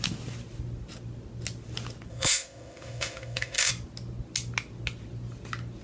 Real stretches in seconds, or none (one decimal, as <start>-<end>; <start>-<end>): 0.0-2.1; 3.7-5.8